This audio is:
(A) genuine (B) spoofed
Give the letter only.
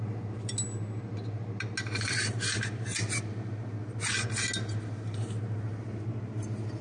A